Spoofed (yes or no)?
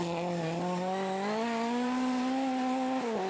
no